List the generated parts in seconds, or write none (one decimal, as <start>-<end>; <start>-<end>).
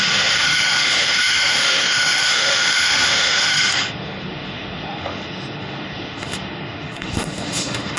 0.0-8.0